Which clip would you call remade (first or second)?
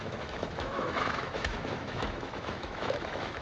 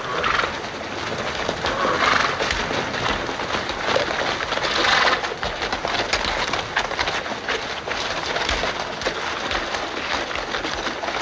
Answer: first